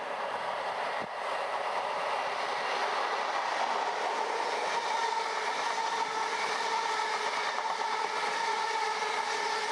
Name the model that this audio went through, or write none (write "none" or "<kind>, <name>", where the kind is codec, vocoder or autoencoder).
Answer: none